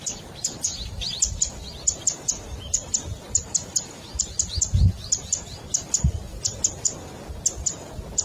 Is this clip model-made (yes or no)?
no